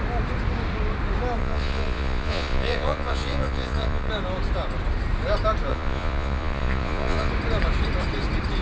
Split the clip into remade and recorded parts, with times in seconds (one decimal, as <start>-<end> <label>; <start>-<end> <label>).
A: 0.0-1.4 recorded; 1.4-4.1 remade; 4.1-5.7 recorded; 5.7-7.3 remade; 7.3-8.6 recorded